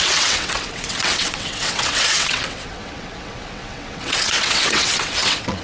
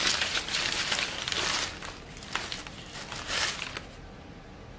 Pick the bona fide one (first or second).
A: second